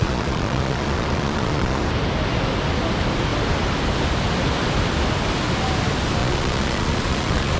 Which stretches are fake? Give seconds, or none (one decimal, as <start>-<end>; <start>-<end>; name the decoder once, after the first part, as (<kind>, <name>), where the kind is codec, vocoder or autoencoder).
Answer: 0.0-1.8 (vocoder, Vocos); 6.2-7.6